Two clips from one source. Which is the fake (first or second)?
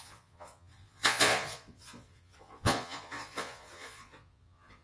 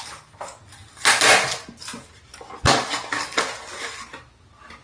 first